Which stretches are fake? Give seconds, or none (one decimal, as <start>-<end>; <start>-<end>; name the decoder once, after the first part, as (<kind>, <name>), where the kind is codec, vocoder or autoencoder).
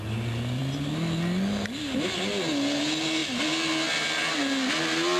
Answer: none